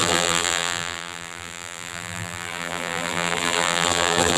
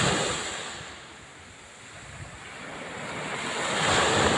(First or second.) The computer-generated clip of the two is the first